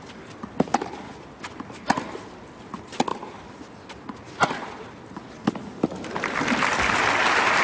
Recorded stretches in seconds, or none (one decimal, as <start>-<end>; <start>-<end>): 0.0-7.6